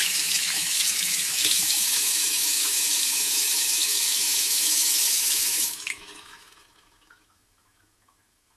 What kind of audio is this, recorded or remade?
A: remade